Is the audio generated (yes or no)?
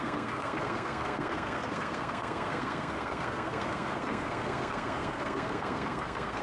yes